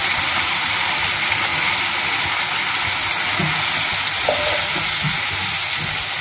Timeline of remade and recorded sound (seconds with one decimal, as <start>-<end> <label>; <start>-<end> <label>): 0.0-0.8 remade; 0.8-6.2 recorded